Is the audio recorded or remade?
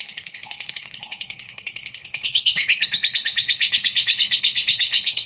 remade